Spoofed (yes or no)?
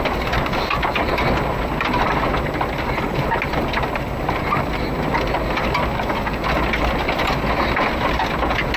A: no